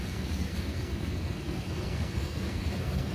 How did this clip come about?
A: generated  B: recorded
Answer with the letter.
A